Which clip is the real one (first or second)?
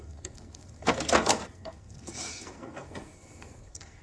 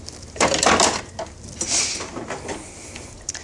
second